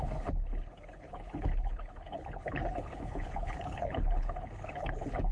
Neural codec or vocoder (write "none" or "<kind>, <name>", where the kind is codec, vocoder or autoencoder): codec, HILCodec